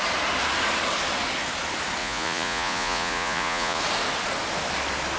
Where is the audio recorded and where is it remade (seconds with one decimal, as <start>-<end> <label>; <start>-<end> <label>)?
0.0-2.0 recorded; 2.0-3.8 remade; 3.8-5.2 recorded